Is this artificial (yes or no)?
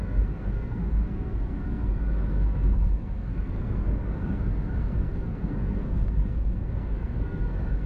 yes